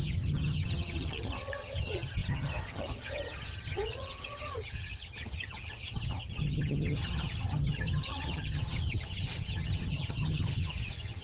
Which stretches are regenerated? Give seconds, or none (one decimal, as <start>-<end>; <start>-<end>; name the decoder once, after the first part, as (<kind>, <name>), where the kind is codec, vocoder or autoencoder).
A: 0.0-11.2 (vocoder, HiFi-GAN)